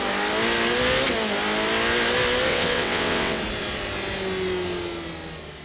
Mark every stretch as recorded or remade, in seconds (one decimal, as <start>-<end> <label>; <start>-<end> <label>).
0.0-2.5 recorded; 2.5-3.4 remade; 3.4-5.6 recorded